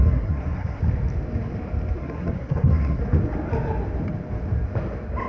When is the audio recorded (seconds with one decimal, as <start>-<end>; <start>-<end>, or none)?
0.8-2.0; 3.0-5.3